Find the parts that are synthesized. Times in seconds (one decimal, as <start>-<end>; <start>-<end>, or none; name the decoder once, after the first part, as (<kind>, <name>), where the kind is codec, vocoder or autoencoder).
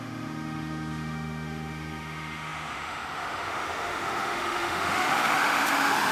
0.0-6.1 (autoencoder, DAC-VAE)